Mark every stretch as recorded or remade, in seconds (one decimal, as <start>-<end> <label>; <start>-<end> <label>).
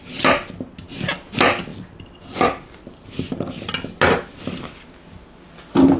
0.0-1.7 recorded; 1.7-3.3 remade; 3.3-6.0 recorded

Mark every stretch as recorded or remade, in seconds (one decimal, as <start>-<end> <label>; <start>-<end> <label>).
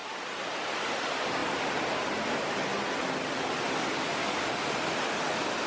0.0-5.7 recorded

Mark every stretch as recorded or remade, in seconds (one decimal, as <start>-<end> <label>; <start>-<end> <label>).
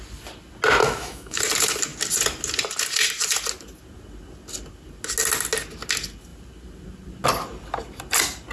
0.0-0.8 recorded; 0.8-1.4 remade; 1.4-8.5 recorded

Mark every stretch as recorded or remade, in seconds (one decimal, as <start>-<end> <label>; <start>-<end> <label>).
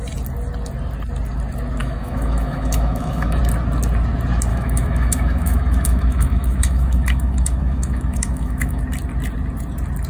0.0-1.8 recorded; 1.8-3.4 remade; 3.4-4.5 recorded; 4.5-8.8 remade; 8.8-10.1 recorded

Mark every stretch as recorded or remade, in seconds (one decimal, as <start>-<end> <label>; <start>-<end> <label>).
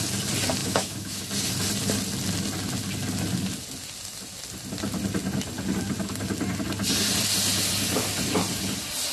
0.0-0.6 recorded; 0.6-1.2 remade; 1.2-9.1 recorded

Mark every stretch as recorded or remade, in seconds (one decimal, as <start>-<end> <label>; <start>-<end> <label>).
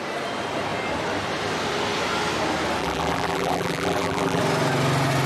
0.0-2.8 recorded; 2.8-4.4 remade; 4.4-5.3 recorded